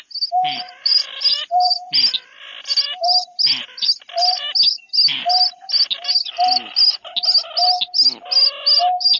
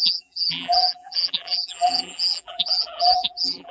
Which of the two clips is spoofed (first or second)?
second